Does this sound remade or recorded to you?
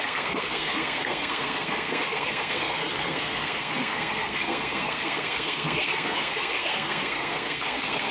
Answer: remade